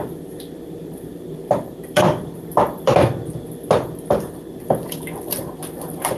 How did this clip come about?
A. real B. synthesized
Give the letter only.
B